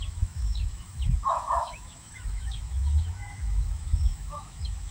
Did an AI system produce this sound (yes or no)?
yes